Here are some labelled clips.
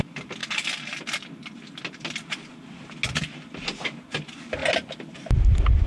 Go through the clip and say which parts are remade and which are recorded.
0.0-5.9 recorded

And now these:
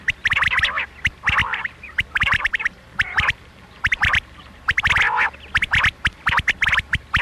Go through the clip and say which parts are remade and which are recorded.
0.0-1.4 recorded; 1.4-4.8 remade; 4.8-7.2 recorded